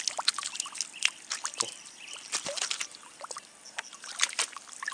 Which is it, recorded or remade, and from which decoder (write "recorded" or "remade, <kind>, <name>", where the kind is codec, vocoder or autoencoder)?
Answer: recorded